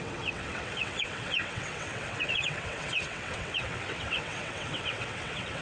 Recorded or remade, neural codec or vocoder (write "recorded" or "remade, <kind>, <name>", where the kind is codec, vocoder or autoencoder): remade, vocoder, WaveNeXt